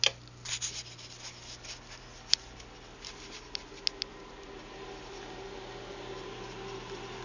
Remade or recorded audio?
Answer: recorded